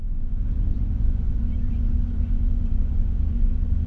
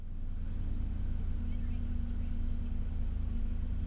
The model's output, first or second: first